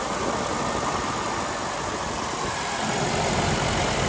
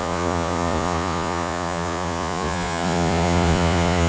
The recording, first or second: first